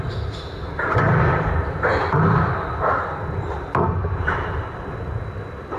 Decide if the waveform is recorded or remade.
recorded